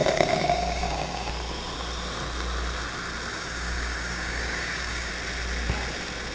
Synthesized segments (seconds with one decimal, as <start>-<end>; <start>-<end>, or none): 0.0-1.3; 3.3-5.1